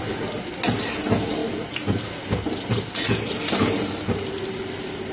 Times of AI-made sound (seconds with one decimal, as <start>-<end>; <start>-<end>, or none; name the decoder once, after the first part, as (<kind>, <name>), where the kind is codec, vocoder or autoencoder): none